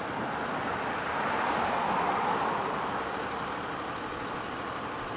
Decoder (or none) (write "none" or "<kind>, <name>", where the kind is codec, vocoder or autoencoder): none